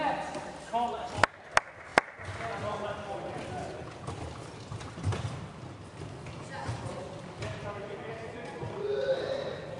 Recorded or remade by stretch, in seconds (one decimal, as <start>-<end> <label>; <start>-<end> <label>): 0.0-9.8 recorded